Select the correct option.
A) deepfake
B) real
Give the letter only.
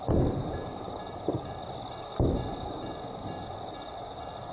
B